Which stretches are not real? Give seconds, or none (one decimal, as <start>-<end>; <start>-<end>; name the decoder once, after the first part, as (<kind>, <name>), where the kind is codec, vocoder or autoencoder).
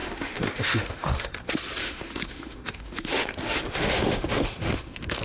0.0-1.3 (autoencoder, DAC-VAE); 1.8-5.2